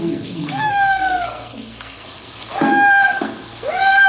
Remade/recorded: remade